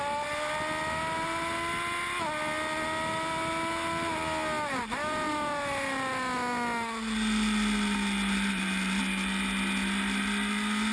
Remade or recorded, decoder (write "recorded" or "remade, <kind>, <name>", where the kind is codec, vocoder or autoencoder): recorded